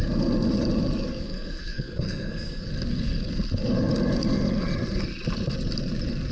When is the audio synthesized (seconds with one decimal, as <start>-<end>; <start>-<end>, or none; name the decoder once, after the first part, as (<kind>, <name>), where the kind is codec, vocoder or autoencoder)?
1.1-2.7 (codec, SNAC)